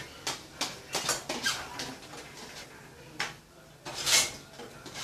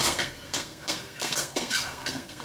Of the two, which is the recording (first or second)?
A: first